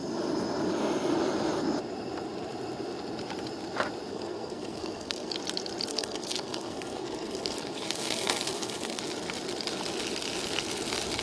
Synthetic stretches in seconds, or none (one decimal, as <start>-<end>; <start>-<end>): 4.1-5.3; 5.9-9.0